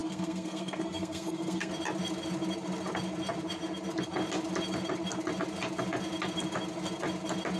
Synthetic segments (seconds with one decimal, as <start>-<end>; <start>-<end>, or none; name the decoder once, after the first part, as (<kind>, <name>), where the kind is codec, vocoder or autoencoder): 0.0-1.7 (codec, SNAC)